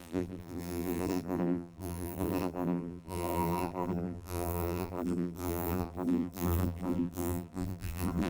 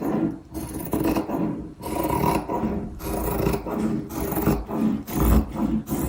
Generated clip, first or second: first